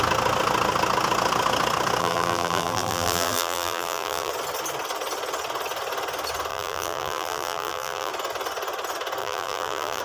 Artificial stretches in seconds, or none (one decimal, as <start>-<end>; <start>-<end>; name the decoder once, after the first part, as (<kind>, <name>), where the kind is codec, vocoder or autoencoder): 2.0-4.3 (vocoder, BigVGAN v2); 6.5-8.1; 9.2-10.0